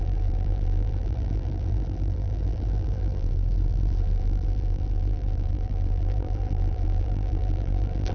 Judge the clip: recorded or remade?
remade